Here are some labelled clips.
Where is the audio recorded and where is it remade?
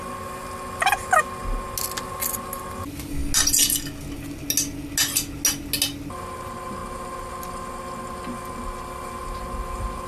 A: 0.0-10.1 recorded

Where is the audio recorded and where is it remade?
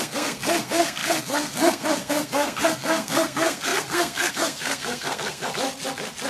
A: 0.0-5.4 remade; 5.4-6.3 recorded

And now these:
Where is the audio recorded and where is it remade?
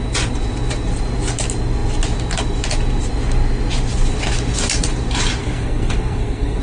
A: 0.0-5.4 recorded; 5.4-6.6 remade